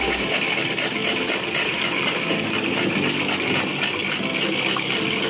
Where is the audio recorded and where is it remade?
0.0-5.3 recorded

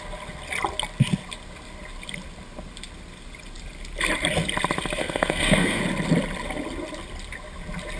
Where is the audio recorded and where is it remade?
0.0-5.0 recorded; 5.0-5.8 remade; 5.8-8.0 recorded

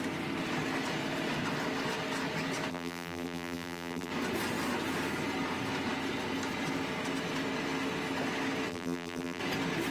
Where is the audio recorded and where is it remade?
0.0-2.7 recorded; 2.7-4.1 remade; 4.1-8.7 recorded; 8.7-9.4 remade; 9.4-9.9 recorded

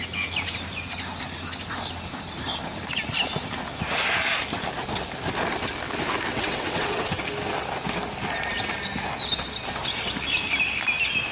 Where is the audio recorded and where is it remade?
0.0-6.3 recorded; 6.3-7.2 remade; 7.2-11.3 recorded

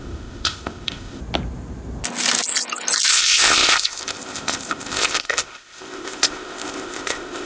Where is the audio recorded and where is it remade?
0.0-1.2 remade; 1.2-3.1 recorded; 3.1-7.5 remade

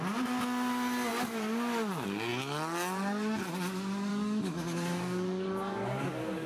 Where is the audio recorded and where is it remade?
0.0-4.1 recorded; 4.1-6.5 remade

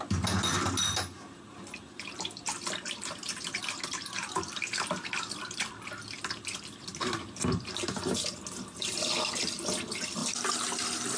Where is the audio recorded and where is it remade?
0.0-11.2 recorded